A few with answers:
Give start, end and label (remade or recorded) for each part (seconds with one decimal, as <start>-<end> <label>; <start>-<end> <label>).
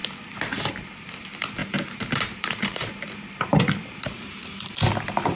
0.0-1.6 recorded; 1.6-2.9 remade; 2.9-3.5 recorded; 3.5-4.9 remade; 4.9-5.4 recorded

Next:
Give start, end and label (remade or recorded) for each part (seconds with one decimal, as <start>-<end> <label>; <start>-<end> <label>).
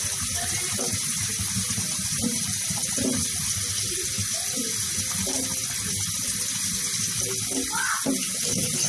0.0-2.8 remade; 2.8-8.1 recorded; 8.1-8.9 remade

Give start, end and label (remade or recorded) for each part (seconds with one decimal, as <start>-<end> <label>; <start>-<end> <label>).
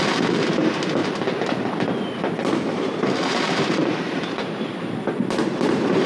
0.0-1.0 recorded; 1.0-4.7 remade; 4.7-5.4 recorded; 5.4-6.1 remade